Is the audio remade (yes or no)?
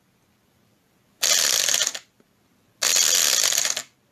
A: no